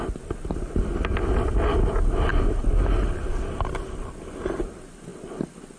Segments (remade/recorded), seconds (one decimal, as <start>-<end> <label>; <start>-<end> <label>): 0.0-5.8 recorded